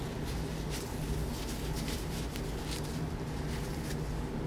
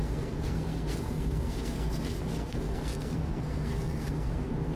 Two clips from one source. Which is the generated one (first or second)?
second